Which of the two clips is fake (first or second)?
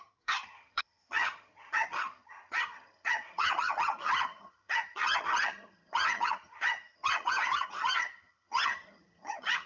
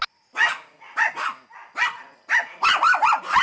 first